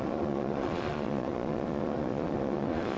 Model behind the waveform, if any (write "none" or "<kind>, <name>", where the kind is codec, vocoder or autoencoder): vocoder, Vocos